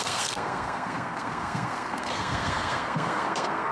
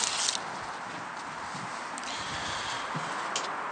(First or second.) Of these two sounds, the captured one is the second